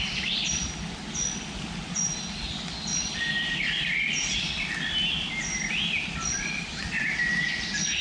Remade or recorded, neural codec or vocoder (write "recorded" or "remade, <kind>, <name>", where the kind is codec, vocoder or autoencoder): recorded